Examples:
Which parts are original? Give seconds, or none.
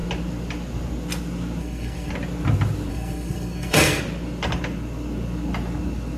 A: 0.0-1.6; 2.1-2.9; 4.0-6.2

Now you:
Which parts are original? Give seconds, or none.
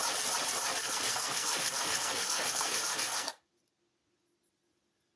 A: 0.0-0.8; 3.5-5.2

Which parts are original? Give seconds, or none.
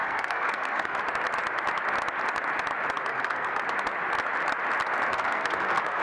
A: 1.0-3.1; 3.6-5.1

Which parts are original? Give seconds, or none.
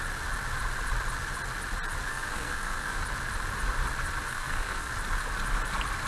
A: 0.0-2.1; 3.0-4.3; 4.9-6.1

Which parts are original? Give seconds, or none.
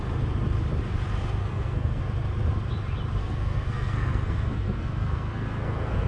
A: 0.0-1.4; 2.0-3.2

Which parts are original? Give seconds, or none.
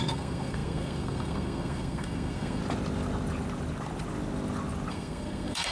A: 2.6-4.9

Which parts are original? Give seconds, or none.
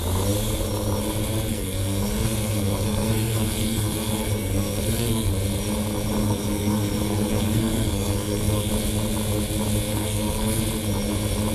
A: 0.0-1.5; 5.3-6.2; 8.7-9.9; 10.6-11.5